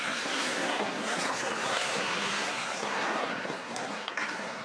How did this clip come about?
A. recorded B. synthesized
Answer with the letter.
B